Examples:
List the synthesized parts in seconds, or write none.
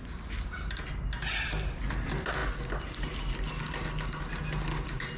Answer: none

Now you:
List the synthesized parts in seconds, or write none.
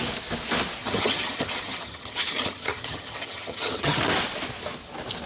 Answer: 0.8-4.0